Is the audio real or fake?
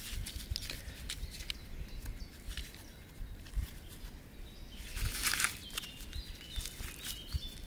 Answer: real